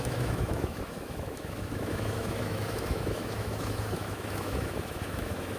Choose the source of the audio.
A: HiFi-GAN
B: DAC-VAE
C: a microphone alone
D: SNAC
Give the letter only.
B